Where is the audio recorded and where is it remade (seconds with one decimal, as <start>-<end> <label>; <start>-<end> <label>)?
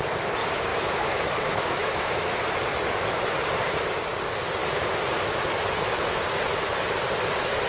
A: 0.0-0.7 recorded; 0.7-2.4 remade; 2.4-7.7 recorded